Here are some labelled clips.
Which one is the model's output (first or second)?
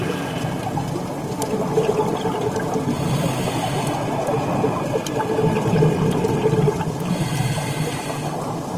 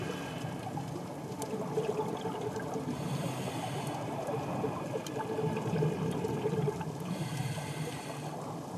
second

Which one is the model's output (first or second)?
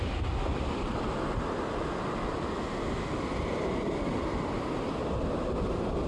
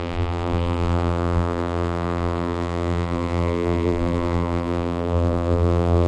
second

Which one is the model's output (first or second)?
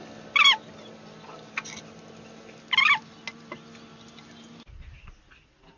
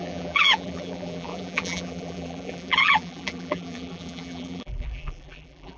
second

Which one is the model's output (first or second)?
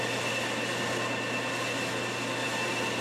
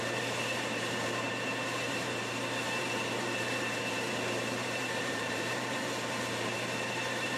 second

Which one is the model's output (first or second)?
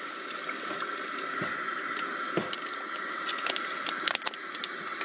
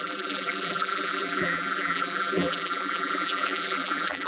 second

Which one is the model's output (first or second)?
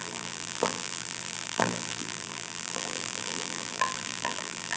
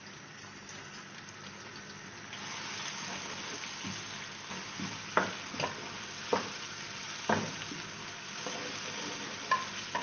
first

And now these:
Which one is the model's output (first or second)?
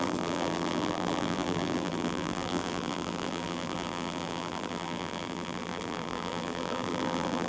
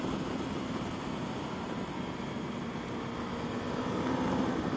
first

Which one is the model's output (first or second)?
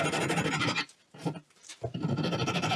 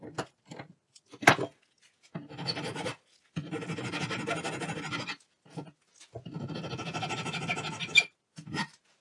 first